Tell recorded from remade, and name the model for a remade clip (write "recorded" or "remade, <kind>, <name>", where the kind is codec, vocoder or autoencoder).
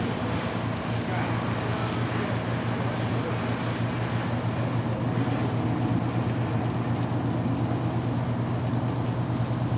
recorded